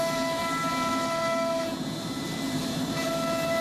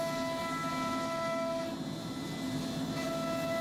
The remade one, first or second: first